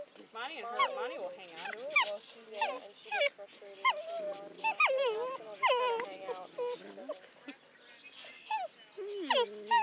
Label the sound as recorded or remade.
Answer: recorded